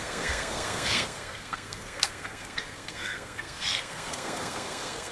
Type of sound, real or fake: fake